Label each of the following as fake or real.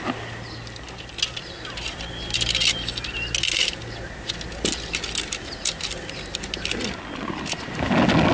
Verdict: real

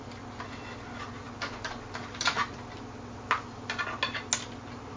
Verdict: real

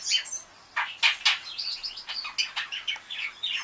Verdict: real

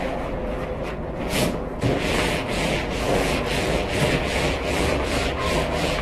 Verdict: fake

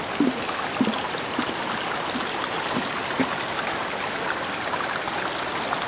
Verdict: real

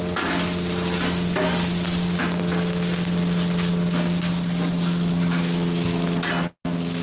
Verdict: real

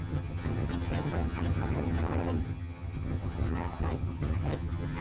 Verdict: fake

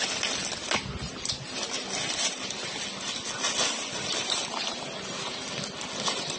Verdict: real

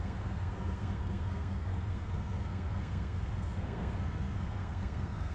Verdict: fake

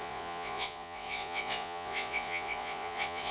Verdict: fake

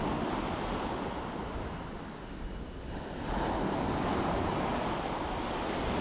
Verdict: real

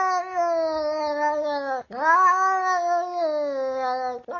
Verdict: real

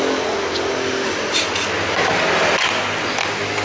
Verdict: real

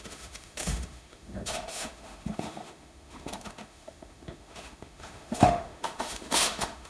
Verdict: fake